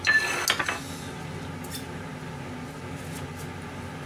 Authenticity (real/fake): real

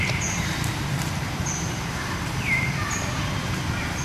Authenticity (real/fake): fake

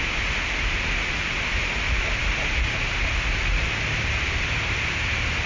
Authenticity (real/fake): real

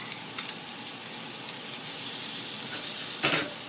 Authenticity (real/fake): real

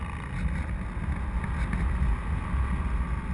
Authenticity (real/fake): real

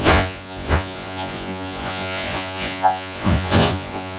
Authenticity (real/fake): fake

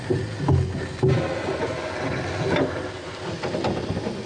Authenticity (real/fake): real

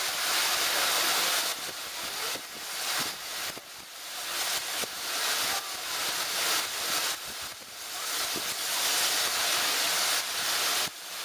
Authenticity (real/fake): real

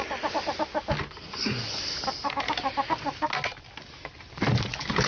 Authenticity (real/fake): real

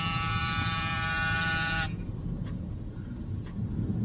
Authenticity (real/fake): fake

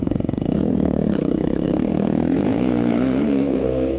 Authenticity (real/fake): fake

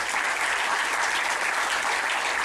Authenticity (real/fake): real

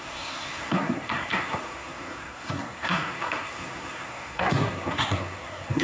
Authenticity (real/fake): fake